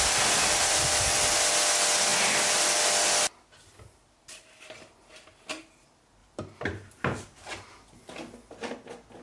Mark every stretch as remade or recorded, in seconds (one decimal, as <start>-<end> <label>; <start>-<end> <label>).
0.0-6.2 recorded; 6.2-7.7 remade; 7.7-9.2 recorded